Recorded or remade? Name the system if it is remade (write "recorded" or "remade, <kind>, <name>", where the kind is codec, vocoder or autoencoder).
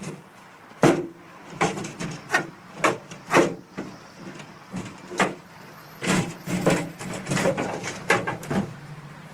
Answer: remade, vocoder, BigVGAN v2